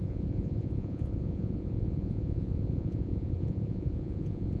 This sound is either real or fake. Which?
fake